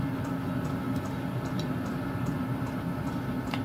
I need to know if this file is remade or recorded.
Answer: recorded